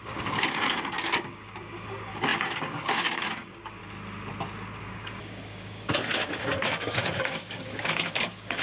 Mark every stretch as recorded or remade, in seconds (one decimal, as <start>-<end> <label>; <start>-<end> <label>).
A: 0.0-3.8 remade; 3.8-4.8 recorded; 4.8-8.6 remade